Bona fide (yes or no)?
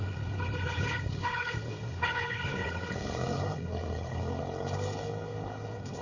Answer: no